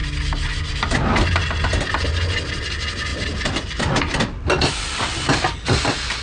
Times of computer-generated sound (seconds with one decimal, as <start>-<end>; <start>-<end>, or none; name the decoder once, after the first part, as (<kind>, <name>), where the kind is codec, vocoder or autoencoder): none